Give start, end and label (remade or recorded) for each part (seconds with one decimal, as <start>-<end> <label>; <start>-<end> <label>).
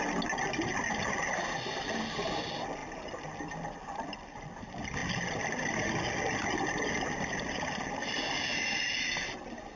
0.0-9.8 recorded